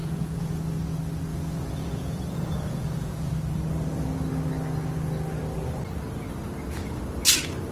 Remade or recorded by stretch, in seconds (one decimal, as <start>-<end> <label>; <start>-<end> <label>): 0.0-0.6 remade; 0.6-1.3 recorded; 1.3-3.3 remade; 3.3-7.7 recorded